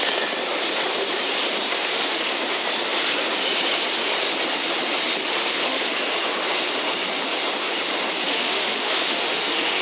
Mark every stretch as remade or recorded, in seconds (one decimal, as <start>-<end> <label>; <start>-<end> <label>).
0.0-1.7 recorded; 1.7-2.3 remade; 2.3-5.2 recorded; 5.2-5.9 remade; 5.9-8.3 recorded; 8.3-9.8 remade